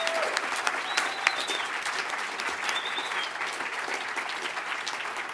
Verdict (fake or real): fake